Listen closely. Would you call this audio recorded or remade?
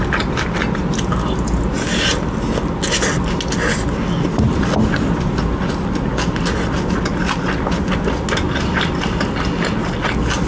recorded